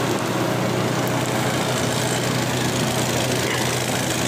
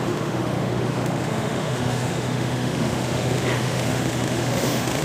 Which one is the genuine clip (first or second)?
first